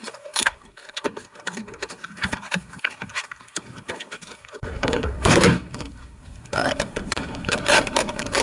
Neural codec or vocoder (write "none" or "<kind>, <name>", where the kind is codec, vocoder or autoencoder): codec, SNAC